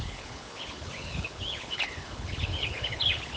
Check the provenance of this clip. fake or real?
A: fake